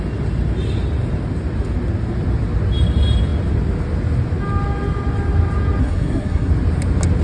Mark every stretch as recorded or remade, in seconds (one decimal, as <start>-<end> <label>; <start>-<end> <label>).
0.0-5.8 recorded; 5.8-6.5 remade; 6.5-7.2 recorded